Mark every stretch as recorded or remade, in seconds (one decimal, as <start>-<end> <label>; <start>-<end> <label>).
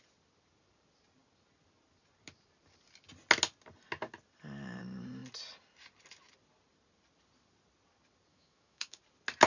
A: 0.0-8.3 recorded; 8.3-9.0 remade; 9.0-9.5 recorded